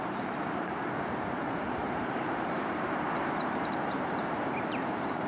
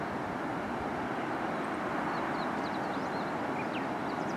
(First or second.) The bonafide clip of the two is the second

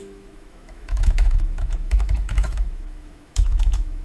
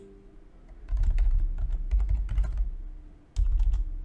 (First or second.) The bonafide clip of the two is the second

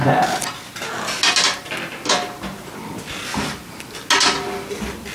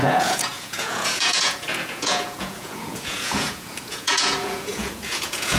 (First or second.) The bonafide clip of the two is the first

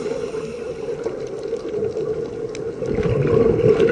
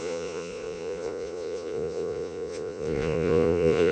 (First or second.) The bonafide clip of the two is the first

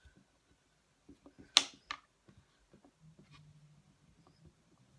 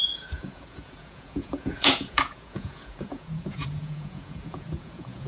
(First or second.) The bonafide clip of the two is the first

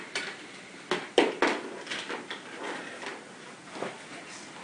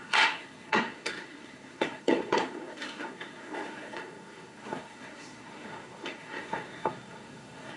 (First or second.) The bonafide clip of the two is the first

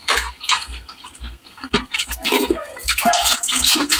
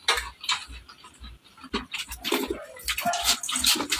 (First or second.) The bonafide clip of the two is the second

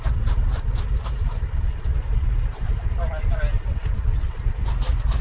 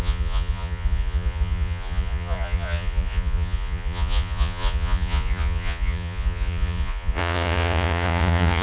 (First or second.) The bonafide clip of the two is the first